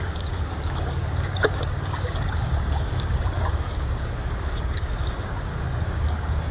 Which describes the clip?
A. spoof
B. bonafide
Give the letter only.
A